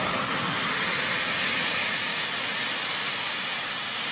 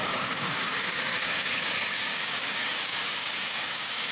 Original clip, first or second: first